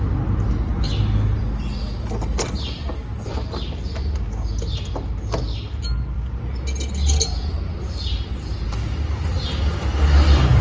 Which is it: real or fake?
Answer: real